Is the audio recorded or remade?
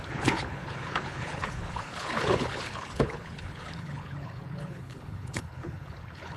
remade